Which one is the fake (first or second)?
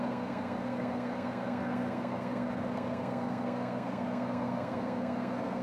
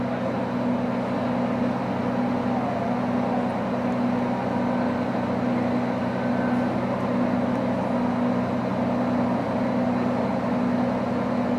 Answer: first